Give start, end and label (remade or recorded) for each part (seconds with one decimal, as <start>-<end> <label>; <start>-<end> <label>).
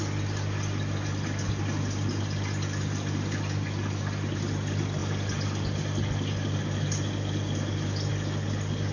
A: 0.0-8.9 recorded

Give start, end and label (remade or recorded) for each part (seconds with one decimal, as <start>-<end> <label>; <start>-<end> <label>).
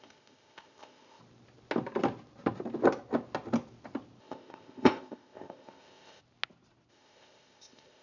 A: 0.0-1.2 remade; 1.2-4.2 recorded; 4.2-6.2 remade; 6.2-6.9 recorded; 6.9-8.0 remade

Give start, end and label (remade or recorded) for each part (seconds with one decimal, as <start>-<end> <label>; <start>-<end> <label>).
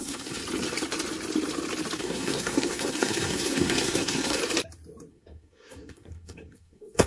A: 0.0-0.4 remade; 0.4-2.0 recorded; 2.0-4.4 remade; 4.4-5.1 recorded; 5.1-7.1 remade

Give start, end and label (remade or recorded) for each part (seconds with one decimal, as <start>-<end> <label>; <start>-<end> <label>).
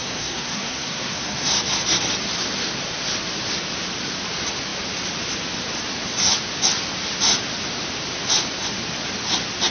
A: 0.0-1.5 remade; 1.5-9.7 recorded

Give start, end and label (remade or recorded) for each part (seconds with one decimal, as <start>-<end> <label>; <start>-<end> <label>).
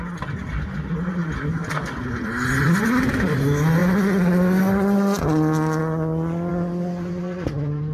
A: 0.0-7.9 recorded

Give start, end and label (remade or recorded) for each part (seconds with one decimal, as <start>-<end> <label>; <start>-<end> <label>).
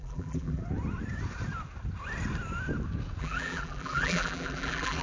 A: 0.0-0.6 remade; 0.6-3.2 recorded; 3.2-5.0 remade